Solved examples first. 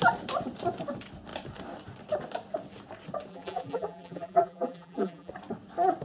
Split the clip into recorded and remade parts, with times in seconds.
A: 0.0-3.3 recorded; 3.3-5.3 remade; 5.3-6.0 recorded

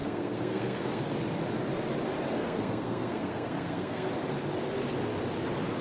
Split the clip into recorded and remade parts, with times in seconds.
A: 0.0-1.0 remade; 1.0-2.4 recorded; 2.4-4.1 remade; 4.1-5.8 recorded

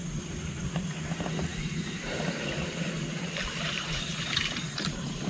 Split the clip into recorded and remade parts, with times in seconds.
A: 0.0-1.5 remade; 1.5-4.7 recorded; 4.7-5.3 remade

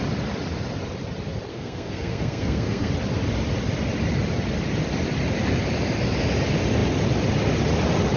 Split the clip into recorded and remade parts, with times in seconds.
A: 0.0-1.5 recorded; 1.5-2.9 remade; 2.9-8.2 recorded

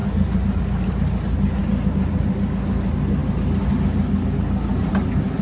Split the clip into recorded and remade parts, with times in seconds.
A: 0.0-5.4 recorded